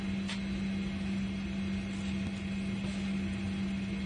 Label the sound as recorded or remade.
recorded